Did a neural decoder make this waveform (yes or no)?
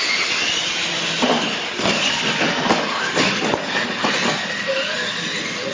no